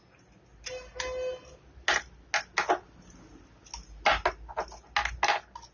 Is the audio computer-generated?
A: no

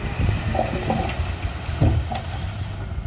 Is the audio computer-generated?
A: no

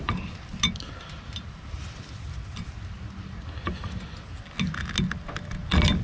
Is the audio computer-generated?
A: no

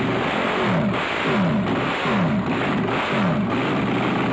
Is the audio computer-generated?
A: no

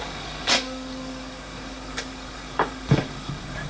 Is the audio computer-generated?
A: yes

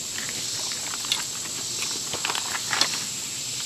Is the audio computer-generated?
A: no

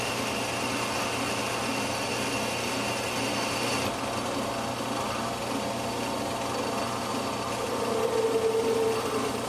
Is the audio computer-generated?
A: no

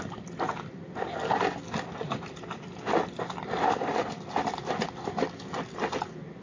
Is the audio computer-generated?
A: no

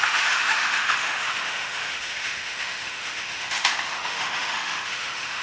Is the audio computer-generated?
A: yes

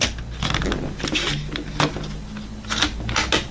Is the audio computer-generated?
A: no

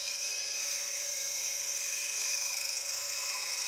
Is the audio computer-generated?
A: yes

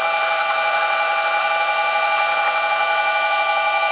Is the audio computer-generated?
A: no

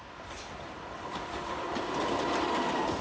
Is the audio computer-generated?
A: yes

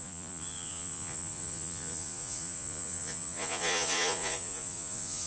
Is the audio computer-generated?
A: yes